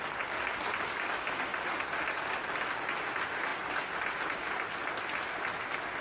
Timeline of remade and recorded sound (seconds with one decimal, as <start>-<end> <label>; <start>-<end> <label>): 0.0-6.0 recorded